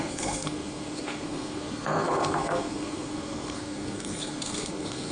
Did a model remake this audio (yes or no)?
yes